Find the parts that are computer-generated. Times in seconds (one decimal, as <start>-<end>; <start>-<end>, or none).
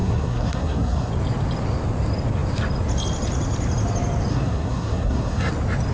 0.0-1.1; 4.3-5.5